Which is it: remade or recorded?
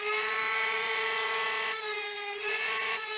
remade